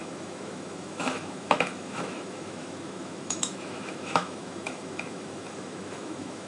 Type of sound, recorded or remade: remade